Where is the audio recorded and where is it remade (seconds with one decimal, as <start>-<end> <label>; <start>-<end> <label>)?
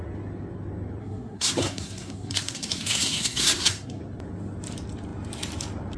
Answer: 0.0-1.0 recorded; 1.0-4.0 remade; 4.0-6.0 recorded